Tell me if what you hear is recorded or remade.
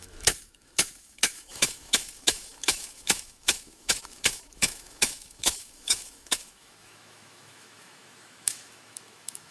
remade